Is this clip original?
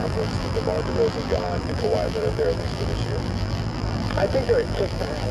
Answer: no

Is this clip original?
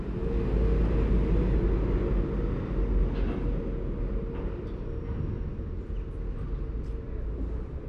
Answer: yes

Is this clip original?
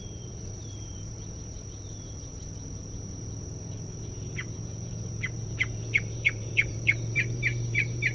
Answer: no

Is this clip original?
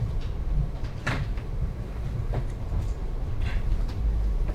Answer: no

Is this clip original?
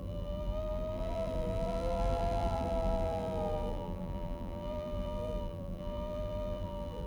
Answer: no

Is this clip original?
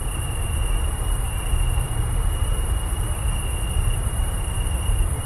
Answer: no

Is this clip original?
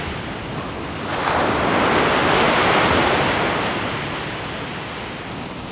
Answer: yes